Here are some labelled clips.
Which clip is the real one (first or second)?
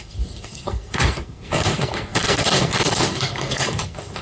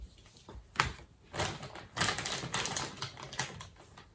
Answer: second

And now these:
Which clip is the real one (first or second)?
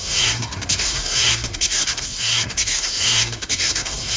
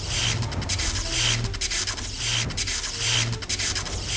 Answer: second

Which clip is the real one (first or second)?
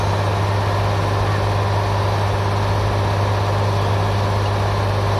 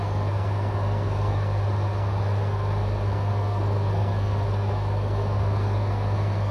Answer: first